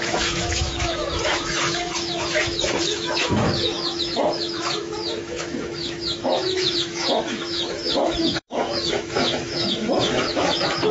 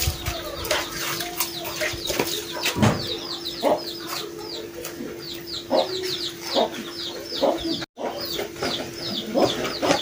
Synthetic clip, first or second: first